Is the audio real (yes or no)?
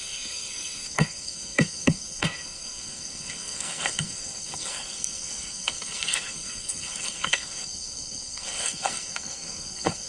no